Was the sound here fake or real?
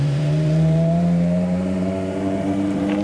fake